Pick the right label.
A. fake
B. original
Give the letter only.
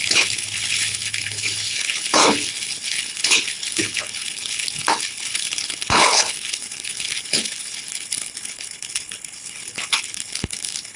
A